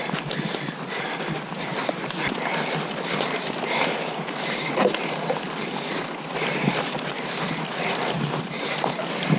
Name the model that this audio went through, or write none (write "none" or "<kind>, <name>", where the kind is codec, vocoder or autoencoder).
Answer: vocoder, BigVGAN v2